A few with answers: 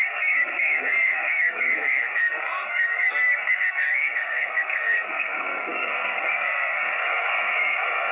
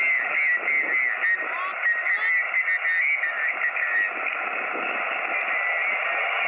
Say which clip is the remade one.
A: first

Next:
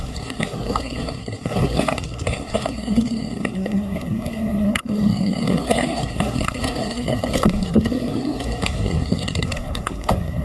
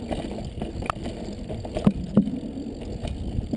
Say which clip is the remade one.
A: first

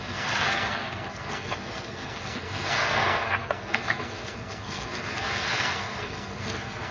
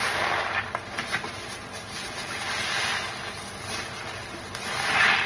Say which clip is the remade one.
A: first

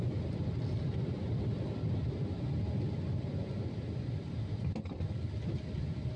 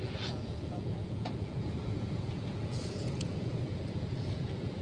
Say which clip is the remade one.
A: second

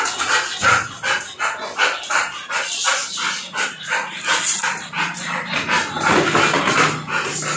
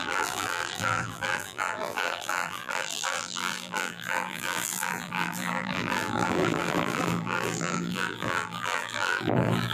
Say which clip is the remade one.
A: second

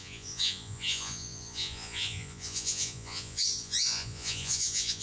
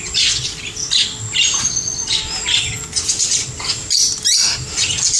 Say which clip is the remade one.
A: first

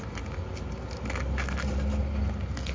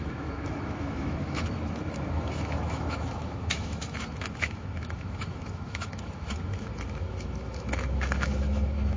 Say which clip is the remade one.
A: second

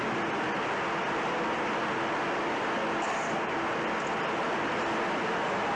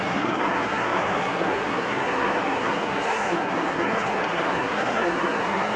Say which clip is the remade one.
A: second